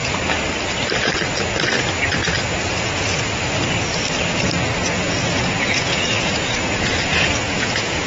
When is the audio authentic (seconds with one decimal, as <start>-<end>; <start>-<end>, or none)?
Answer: 0.0-4.8